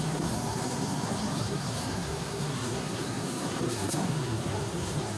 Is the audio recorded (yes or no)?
no